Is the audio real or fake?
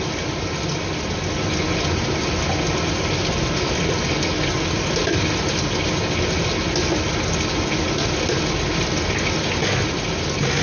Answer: real